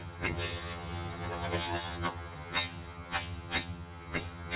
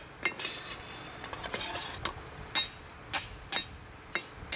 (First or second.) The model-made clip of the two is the first